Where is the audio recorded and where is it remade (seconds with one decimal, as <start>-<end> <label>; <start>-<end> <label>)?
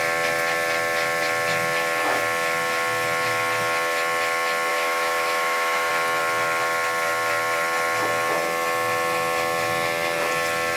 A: 0.0-4.7 recorded; 4.7-5.9 remade; 5.9-10.8 recorded